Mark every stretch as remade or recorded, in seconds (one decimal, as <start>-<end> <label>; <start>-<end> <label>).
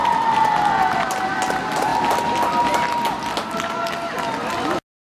0.0-5.0 recorded